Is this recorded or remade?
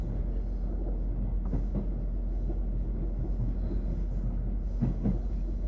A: recorded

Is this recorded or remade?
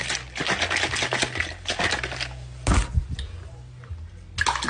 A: recorded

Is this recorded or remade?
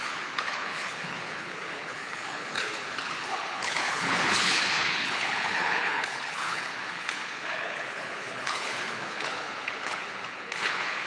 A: remade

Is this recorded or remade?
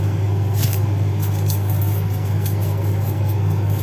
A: remade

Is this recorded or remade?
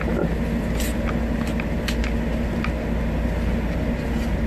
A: recorded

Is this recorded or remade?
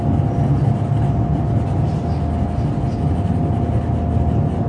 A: recorded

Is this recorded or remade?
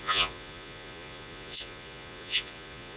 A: remade